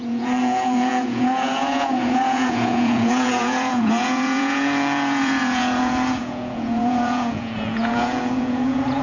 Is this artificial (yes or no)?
yes